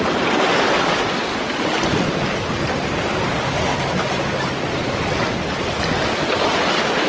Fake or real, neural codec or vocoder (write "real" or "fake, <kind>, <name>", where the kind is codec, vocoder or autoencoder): real